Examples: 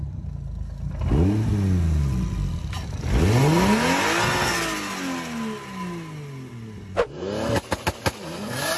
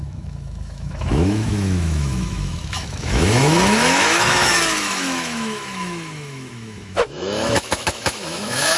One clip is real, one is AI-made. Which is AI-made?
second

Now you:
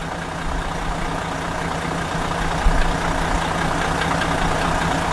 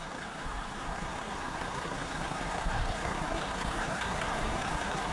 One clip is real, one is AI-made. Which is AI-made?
second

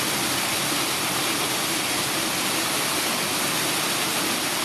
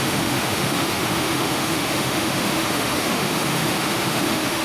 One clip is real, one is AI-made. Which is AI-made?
second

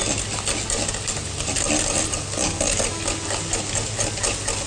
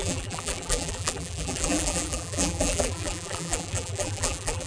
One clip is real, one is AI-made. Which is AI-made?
second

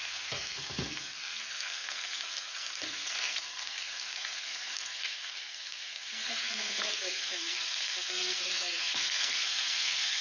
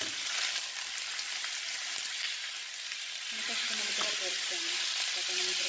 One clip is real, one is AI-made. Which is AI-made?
first